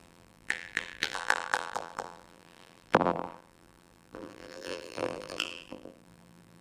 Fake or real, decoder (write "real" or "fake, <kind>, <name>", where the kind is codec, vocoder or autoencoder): fake, vocoder, BigVGAN v2